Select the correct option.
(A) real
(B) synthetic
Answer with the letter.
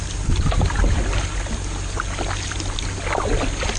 A